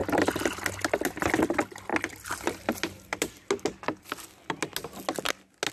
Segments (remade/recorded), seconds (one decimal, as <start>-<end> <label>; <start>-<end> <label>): 0.0-5.7 recorded